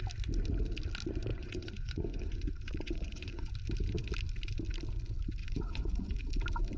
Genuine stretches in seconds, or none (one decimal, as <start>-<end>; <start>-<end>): 0.0-1.3; 3.5-5.4; 6.3-6.8